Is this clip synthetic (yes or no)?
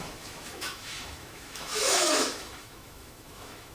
yes